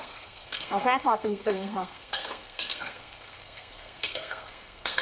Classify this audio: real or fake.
fake